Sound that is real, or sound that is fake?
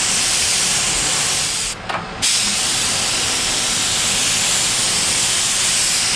real